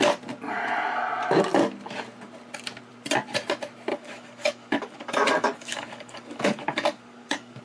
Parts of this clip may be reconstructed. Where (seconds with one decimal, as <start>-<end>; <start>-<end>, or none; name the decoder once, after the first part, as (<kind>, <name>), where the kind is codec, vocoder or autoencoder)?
3.9-7.6 (codec, DAC)